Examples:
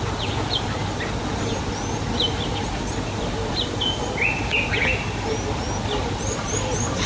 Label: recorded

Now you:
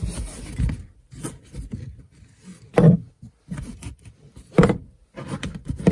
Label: recorded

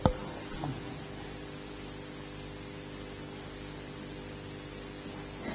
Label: recorded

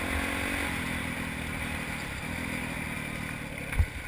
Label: recorded